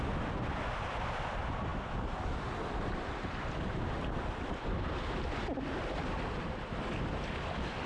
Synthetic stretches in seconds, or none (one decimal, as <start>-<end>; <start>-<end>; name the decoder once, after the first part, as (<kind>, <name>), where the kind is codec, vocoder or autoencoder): none